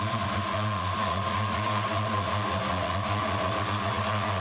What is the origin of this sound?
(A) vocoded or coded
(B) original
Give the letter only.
A